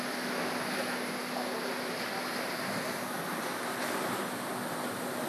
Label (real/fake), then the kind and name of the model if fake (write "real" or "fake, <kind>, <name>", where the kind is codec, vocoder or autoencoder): real